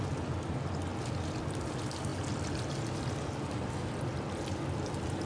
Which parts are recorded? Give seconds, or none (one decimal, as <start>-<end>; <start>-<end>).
0.0-5.3